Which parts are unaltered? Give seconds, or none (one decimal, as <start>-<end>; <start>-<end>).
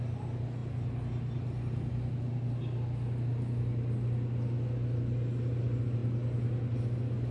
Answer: 0.0-7.3